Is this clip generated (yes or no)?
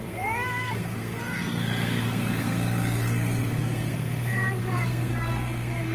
yes